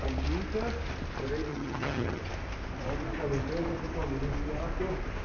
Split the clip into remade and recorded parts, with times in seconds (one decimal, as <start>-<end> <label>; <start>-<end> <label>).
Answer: 0.0-1.5 recorded; 1.5-2.2 remade; 2.2-5.2 recorded